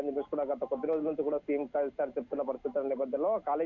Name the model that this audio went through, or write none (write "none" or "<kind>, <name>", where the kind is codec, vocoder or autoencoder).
none